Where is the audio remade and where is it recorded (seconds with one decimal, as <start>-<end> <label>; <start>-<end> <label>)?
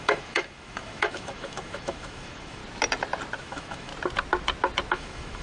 0.0-2.6 remade; 2.6-3.4 recorded; 3.4-3.9 remade; 3.9-4.9 recorded; 4.9-5.4 remade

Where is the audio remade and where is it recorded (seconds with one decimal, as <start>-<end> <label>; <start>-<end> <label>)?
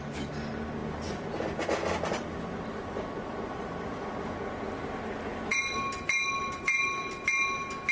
0.0-0.8 recorded; 0.8-4.2 remade; 4.2-7.9 recorded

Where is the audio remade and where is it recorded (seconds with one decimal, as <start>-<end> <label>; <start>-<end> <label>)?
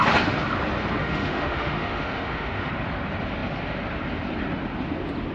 0.0-1.0 recorded; 1.0-2.7 remade; 2.7-5.3 recorded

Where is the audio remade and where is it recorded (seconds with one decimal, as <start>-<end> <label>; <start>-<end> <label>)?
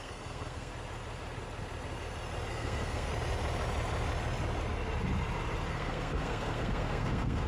0.0-0.7 remade; 0.7-2.5 recorded; 2.5-3.1 remade; 3.1-5.7 recorded; 5.7-7.5 remade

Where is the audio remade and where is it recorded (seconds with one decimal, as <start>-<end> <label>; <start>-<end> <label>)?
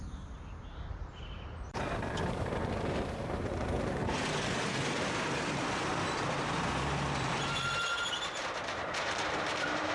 0.0-4.0 remade; 4.0-4.7 recorded; 4.7-5.9 remade; 5.9-8.0 recorded; 8.0-9.9 remade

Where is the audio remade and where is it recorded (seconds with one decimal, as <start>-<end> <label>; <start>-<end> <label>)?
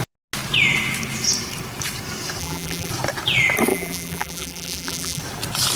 0.0-2.4 recorded; 2.4-2.9 remade; 2.9-3.7 recorded; 3.7-5.2 remade; 5.2-5.8 recorded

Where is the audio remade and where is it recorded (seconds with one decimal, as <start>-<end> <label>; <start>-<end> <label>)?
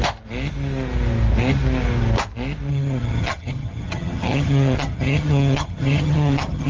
0.0-2.7 recorded; 2.7-6.7 remade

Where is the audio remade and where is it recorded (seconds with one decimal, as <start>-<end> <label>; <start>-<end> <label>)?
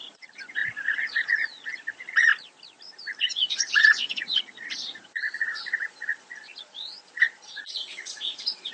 0.0-2.3 remade; 2.3-3.2 recorded; 3.2-8.7 remade